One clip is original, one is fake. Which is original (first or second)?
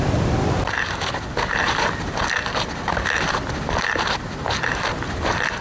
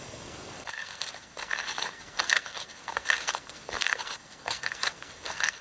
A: first